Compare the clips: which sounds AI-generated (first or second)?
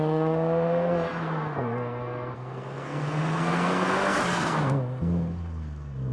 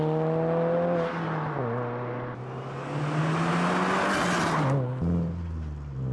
first